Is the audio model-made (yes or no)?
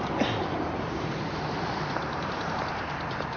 yes